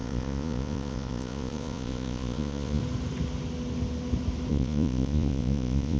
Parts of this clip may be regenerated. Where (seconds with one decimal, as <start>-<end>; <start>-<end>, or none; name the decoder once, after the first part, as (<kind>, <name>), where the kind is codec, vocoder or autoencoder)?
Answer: 0.0-2.8 (vocoder, Vocos); 4.5-6.0